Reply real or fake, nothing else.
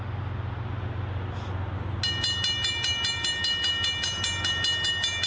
real